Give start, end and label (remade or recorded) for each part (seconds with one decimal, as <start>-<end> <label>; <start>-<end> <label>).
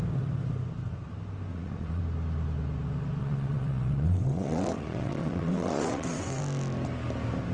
0.0-1.5 recorded; 1.5-2.0 remade; 2.0-3.2 recorded; 3.2-6.4 remade; 6.4-7.5 recorded